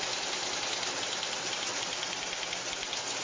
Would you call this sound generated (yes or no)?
no